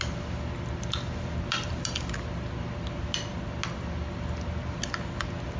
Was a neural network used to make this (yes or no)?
no